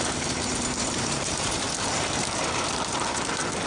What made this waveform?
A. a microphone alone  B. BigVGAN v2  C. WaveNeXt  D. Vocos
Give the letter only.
B